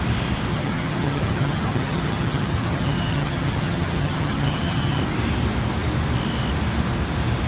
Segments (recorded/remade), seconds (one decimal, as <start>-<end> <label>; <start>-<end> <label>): 0.0-0.5 recorded; 0.5-5.0 remade; 5.0-7.5 recorded